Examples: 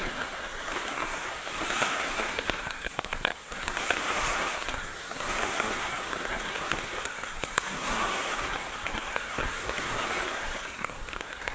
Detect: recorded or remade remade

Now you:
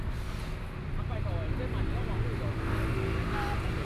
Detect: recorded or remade recorded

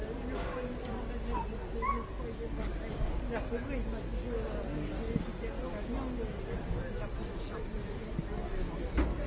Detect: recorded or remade recorded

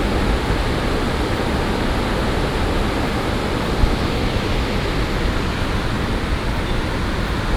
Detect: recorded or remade recorded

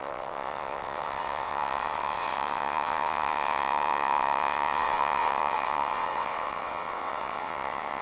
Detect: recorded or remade remade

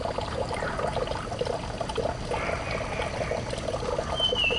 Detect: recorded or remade recorded